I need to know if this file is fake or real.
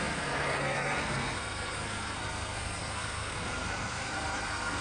fake